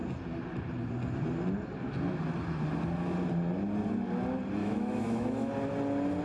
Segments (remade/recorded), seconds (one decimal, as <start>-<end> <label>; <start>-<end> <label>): 0.0-4.6 recorded; 4.6-5.5 remade; 5.5-6.2 recorded